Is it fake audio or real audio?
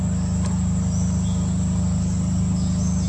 real